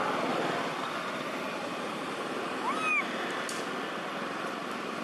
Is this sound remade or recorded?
recorded